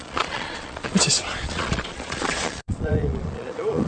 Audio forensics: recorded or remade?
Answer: remade